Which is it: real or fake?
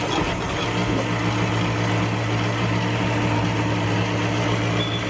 real